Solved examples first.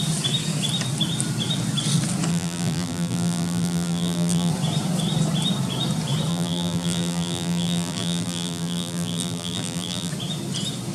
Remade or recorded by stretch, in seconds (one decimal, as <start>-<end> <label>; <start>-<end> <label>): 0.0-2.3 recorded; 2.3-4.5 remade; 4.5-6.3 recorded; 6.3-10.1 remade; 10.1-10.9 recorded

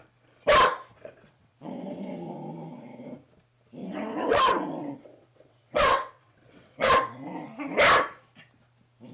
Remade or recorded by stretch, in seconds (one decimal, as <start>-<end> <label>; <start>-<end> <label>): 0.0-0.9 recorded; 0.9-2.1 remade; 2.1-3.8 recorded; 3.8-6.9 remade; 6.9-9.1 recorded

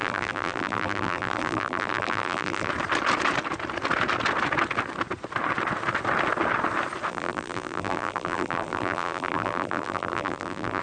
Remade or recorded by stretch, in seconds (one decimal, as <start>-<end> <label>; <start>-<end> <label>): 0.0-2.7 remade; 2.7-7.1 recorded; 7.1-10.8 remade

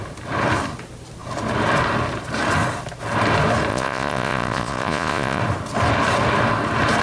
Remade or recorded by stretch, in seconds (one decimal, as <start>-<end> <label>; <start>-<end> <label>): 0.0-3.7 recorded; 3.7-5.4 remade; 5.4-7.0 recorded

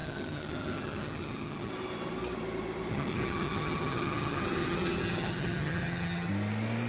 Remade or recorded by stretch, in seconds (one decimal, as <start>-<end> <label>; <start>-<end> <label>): 0.0-1.7 remade; 1.7-2.9 recorded; 2.9-6.3 remade; 6.3-6.9 recorded